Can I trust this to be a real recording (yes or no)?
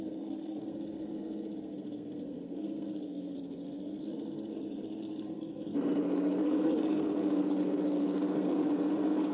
no